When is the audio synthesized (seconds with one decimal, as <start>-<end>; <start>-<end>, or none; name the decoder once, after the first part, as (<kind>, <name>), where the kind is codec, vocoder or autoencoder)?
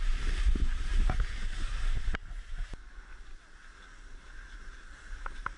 none